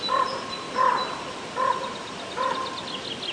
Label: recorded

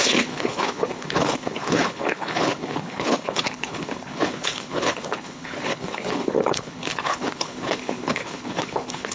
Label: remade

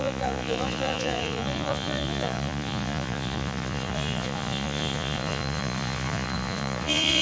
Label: remade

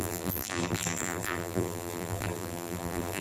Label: remade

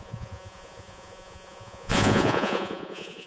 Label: remade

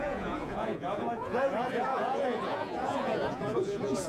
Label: remade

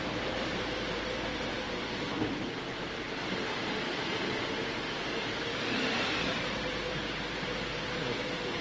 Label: recorded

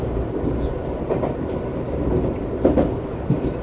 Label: remade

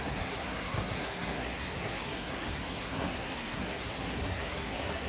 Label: remade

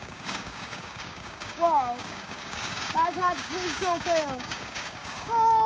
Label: remade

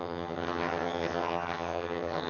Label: remade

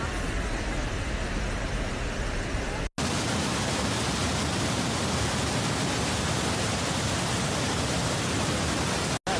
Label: recorded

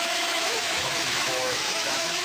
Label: remade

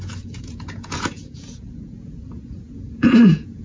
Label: remade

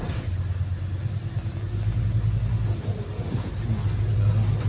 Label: recorded